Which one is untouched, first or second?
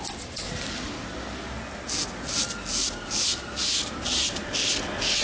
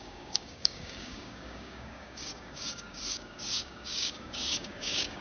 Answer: first